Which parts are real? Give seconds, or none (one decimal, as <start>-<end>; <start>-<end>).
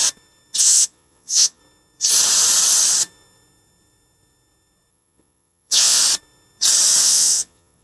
0.0-0.6; 1.6-4.9; 6.0-7.0